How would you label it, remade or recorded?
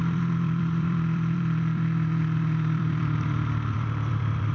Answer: remade